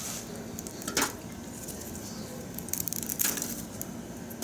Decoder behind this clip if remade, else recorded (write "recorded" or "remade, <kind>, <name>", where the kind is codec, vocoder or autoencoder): recorded